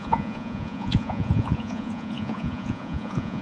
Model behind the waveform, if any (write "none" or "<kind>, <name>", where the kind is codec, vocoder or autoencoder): vocoder, Vocos